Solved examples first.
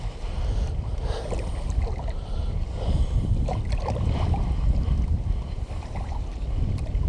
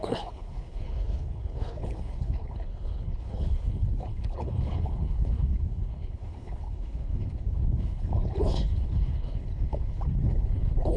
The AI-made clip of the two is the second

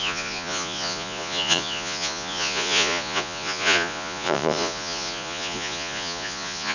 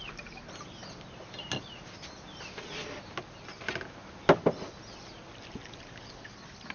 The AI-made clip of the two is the first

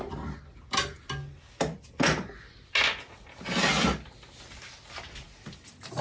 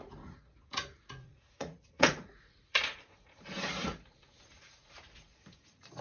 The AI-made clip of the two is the second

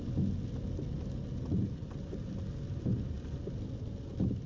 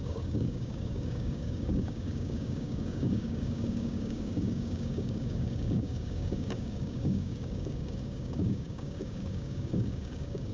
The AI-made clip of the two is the second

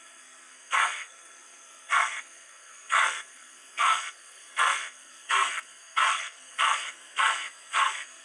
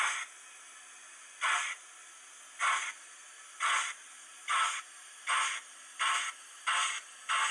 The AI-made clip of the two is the first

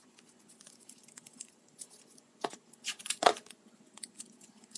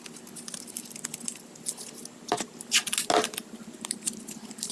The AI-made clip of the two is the first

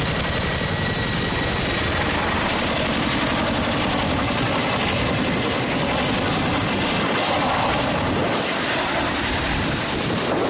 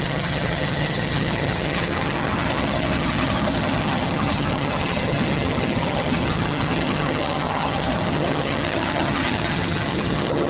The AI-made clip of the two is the second